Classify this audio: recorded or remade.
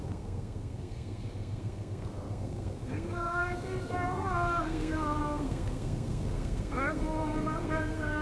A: remade